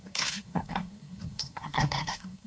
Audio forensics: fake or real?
fake